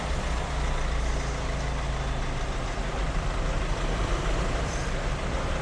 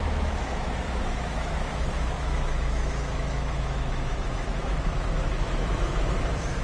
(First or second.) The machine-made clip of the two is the second